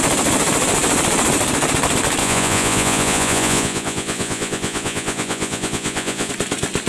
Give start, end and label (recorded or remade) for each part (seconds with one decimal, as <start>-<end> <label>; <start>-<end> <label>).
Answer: 0.0-2.2 recorded; 2.2-6.3 remade; 6.3-6.9 recorded